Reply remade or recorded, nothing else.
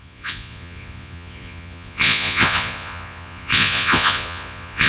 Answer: remade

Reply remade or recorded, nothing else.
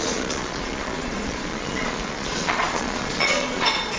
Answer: remade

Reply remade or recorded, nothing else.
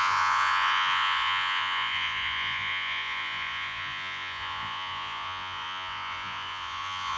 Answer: remade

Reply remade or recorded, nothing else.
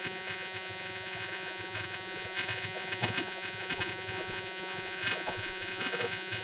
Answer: remade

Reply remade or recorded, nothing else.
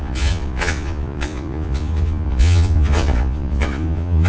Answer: remade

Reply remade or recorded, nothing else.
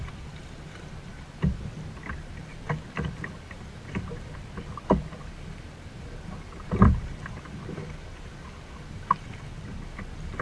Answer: recorded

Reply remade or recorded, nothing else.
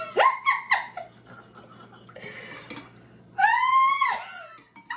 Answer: recorded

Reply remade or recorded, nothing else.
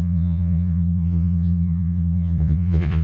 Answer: remade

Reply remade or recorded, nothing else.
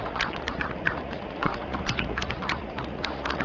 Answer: remade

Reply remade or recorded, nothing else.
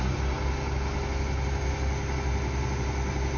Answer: recorded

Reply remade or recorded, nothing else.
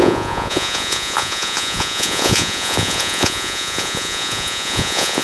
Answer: remade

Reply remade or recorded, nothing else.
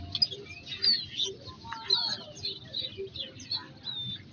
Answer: recorded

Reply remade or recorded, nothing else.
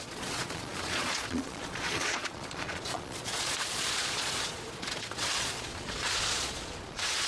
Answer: remade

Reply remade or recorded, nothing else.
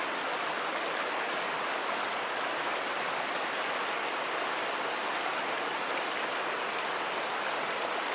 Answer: recorded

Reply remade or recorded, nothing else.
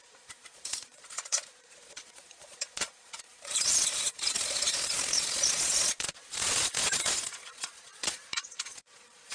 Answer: remade